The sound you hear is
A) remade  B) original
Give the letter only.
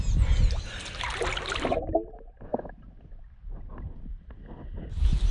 B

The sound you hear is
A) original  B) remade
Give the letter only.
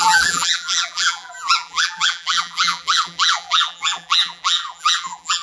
B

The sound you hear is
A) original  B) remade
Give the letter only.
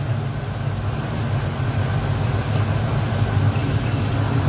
A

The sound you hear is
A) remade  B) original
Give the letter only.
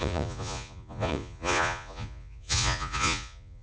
A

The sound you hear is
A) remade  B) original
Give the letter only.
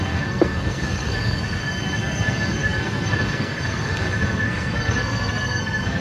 A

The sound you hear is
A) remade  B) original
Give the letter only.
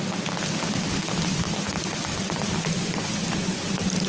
B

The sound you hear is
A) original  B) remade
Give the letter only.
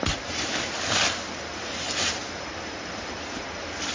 A